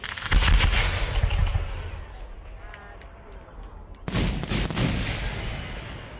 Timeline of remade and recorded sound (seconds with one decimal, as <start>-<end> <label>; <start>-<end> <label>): 0.0-6.2 recorded